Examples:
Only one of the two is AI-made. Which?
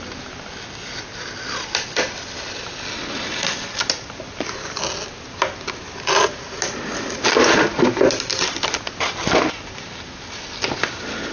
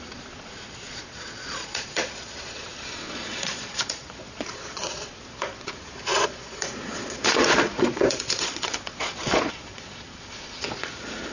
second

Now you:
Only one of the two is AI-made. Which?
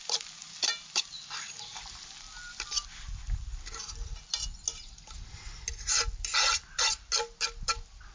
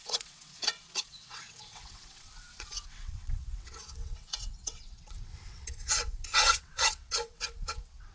second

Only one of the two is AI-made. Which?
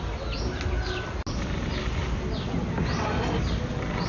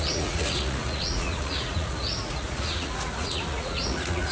second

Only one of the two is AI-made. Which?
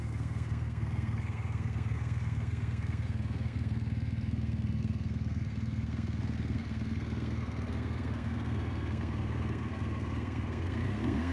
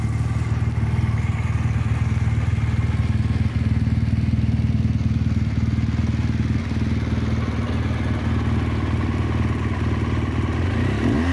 first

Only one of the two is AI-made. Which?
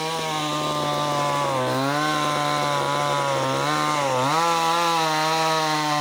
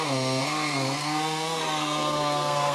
second